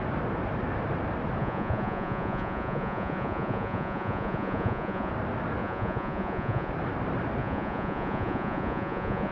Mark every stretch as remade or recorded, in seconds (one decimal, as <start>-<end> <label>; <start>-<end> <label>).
0.0-1.4 recorded; 1.4-5.1 remade; 5.1-5.6 recorded; 5.6-6.7 remade; 6.7-7.4 recorded; 7.4-9.3 remade